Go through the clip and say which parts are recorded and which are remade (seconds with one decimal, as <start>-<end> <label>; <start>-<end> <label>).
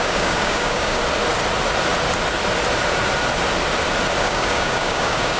0.0-1.0 remade; 1.0-4.2 recorded; 4.2-5.4 remade